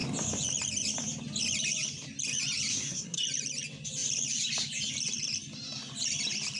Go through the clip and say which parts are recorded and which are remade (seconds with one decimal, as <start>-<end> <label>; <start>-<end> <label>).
0.0-2.7 recorded; 2.7-3.2 remade; 3.2-6.6 recorded

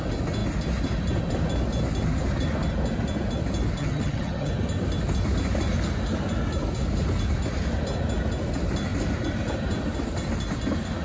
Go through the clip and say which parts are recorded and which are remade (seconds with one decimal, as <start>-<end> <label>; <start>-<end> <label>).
0.0-3.8 recorded; 3.8-4.5 remade; 4.5-11.0 recorded

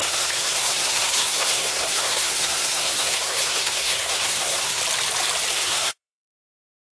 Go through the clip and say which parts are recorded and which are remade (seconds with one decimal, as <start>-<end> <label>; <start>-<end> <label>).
0.0-4.8 remade; 4.8-5.5 recorded; 5.5-6.9 remade